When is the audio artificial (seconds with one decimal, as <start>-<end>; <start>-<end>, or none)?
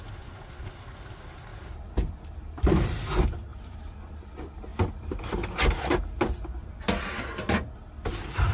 1.5-2.1; 3.5-4.2